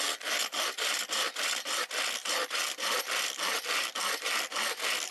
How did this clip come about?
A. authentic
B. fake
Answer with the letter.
B